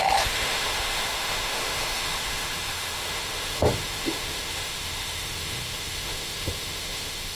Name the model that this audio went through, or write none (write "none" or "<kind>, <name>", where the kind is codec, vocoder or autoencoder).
autoencoder, DAC-VAE